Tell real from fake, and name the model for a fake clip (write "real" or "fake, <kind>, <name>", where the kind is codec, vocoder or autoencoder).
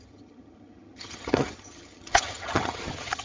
fake, vocoder, HiFi-GAN